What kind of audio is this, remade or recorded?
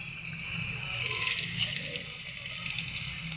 recorded